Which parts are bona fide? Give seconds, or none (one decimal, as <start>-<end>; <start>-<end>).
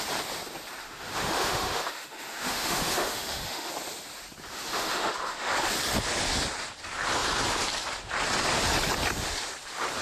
0.0-0.8; 3.7-4.5; 5.5-10.0